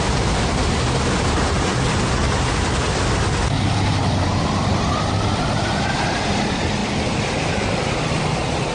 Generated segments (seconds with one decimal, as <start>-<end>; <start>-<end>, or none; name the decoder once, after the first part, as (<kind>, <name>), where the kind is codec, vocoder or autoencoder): none